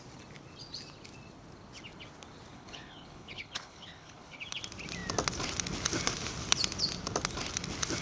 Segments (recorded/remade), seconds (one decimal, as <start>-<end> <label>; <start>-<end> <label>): 0.0-2.5 recorded; 2.5-4.4 remade; 4.4-8.0 recorded